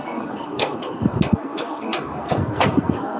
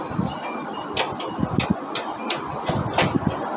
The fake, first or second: first